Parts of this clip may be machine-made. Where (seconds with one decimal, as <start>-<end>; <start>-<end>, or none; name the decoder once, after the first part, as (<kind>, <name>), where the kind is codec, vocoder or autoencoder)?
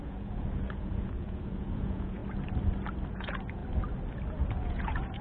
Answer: 0.0-2.2 (vocoder, Vocos); 3.1-3.6; 4.5-5.2